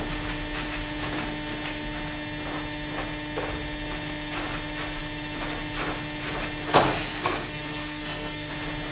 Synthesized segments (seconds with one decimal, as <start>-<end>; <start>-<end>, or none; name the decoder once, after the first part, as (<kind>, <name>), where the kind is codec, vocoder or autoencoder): 7.1-8.5 (codec, SNAC)